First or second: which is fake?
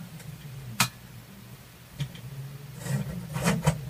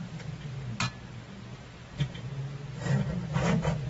first